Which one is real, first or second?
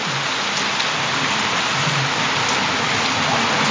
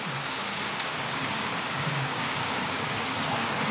first